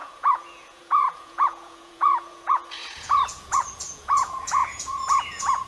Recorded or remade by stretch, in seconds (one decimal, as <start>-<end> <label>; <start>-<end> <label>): 0.0-5.7 remade